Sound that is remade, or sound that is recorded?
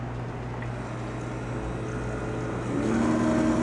recorded